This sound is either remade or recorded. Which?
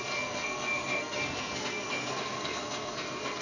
remade